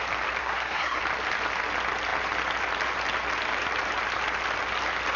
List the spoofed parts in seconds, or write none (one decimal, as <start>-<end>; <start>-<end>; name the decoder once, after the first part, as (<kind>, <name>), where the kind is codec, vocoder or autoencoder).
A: 0.4-1.0 (codec, SNAC)